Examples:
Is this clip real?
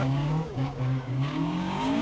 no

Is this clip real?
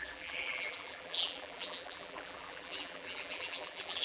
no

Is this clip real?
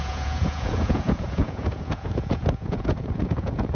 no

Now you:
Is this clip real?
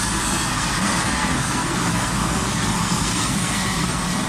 no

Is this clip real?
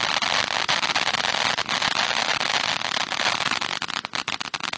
yes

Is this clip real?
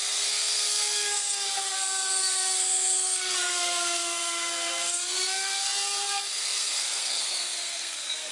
no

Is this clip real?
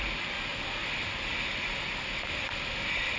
yes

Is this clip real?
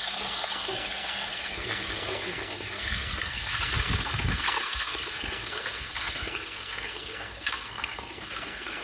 no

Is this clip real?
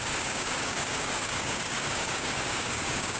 no